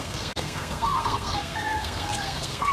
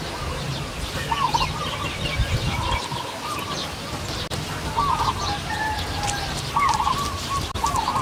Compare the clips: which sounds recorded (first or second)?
second